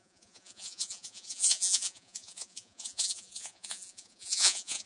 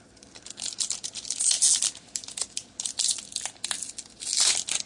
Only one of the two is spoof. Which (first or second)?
first